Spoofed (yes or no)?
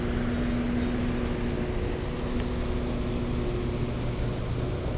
no